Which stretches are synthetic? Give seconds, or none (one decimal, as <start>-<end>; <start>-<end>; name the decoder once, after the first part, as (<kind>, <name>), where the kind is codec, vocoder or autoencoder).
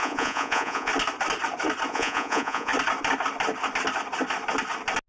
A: 0.0-0.9 (vocoder, Vocos); 1.9-2.7